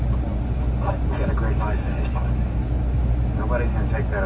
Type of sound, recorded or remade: recorded